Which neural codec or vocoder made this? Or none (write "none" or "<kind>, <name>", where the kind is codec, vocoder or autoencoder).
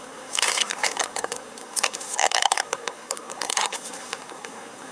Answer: codec, SNAC